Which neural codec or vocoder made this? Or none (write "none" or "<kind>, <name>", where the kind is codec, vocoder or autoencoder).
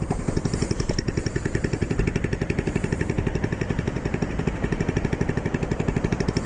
none